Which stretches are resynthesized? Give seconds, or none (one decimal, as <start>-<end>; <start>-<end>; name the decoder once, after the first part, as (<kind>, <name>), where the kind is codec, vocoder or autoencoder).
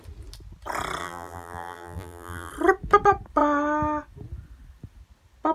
1.0-2.5 (vocoder, BigVGAN v2)